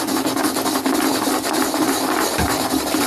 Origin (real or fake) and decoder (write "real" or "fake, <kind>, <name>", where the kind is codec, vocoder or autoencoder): real